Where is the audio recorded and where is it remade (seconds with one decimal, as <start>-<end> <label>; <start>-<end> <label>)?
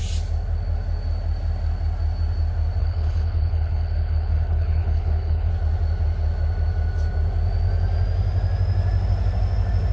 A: 0.0-2.8 recorded; 2.8-5.5 remade; 5.5-9.9 recorded